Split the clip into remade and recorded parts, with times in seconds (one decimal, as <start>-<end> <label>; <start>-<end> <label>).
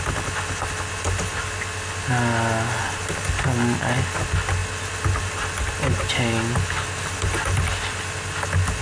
0.0-8.8 recorded